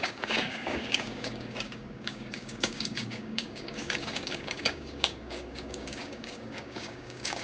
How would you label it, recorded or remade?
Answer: remade